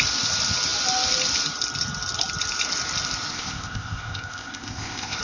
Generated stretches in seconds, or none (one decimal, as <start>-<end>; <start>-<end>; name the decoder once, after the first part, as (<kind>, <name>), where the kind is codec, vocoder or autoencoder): 3.3-5.2 (codec, ZipCodec)